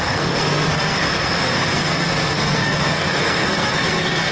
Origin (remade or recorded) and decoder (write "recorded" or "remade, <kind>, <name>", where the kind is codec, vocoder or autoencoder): remade, codec, SNAC